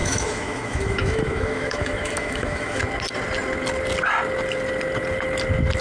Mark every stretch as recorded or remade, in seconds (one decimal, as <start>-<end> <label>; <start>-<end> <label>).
0.0-2.8 remade; 2.8-5.8 recorded